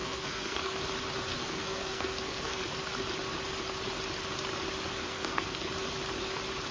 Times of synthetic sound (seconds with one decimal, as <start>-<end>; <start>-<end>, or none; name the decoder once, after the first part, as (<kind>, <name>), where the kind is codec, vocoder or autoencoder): 0.0-0.8 (codec, SNAC); 1.3-2.6; 4.9-5.7